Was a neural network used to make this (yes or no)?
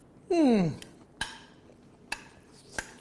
no